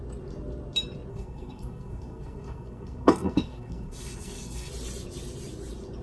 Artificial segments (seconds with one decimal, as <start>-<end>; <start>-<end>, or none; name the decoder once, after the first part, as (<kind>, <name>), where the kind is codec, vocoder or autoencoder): 1.1-4.7 (codec, SNAC)